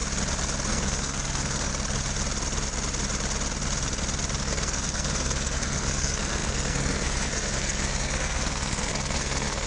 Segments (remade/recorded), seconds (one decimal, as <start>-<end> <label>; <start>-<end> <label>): 0.0-0.7 recorded; 0.7-1.7 remade; 1.7-4.4 recorded; 4.4-9.7 remade